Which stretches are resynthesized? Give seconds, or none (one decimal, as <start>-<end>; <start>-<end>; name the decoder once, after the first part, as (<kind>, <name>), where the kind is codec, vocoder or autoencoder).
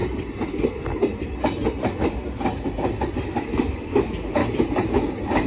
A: 3.3-4.4 (codec, DAC)